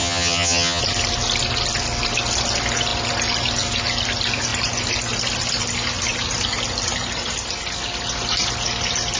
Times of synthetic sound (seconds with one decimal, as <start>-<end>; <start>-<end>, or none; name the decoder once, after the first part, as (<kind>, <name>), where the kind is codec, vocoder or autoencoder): 0.0-0.8 (vocoder, HiFi-GAN)